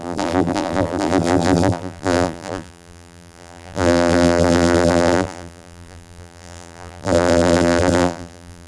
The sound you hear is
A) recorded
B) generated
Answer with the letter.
B